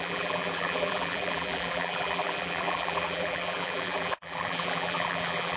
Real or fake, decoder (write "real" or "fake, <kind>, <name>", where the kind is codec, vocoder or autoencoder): fake, vocoder, BigVGAN v2